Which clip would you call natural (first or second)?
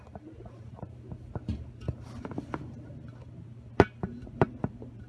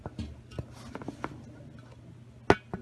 second